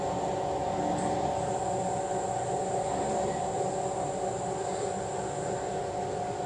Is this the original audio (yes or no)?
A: yes